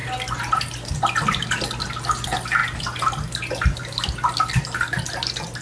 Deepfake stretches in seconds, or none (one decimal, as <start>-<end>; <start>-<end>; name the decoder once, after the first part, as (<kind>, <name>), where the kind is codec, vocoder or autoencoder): none